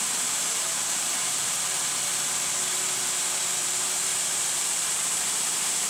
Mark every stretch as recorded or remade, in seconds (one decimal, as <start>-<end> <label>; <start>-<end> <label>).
0.0-2.1 remade; 2.1-3.6 recorded; 3.6-5.9 remade